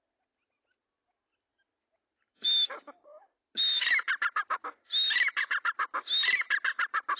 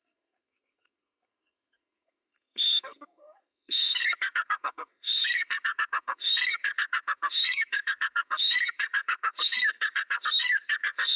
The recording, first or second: first